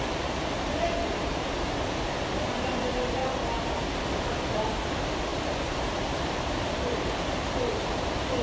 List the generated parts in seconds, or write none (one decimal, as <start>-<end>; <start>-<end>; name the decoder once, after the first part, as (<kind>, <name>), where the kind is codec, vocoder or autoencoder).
0.0-3.2 (vocoder, BigVGAN v2); 4.0-8.4